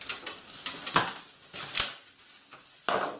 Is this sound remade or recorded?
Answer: recorded